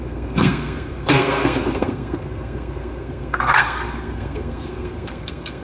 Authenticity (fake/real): fake